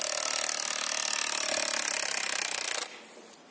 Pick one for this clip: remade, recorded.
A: recorded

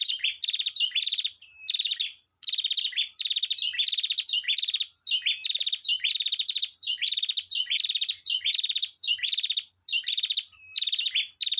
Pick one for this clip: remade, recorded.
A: recorded